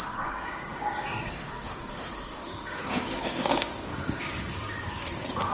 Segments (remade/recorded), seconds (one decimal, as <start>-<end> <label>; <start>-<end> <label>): 0.0-5.5 remade

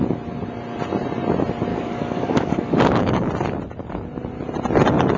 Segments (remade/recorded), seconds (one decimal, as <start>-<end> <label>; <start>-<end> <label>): 0.0-1.7 recorded; 1.7-3.3 remade; 3.3-5.2 recorded

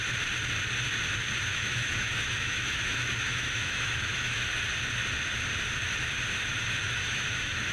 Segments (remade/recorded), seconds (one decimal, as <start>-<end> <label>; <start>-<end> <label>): 0.0-1.5 recorded; 1.5-4.5 remade; 4.5-6.8 recorded; 6.8-7.7 remade

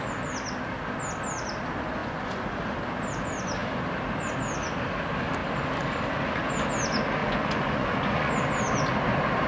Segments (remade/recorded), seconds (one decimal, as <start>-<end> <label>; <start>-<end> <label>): 0.0-2.0 recorded; 2.0-2.6 remade; 2.6-7.2 recorded; 7.2-8.3 remade; 8.3-9.5 recorded